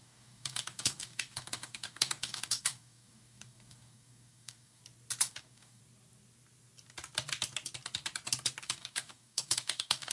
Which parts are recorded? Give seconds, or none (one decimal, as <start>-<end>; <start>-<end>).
4.8-5.3; 5.8-8.6